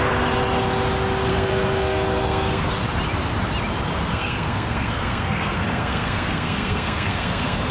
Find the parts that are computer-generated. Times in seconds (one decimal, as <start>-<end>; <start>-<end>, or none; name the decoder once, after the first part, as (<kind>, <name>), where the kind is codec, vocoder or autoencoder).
1.3-2.7 (codec, SNAC); 4.1-7.7